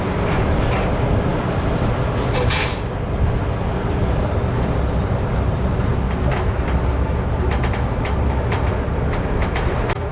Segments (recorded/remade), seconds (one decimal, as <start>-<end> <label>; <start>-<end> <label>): 0.0-10.1 recorded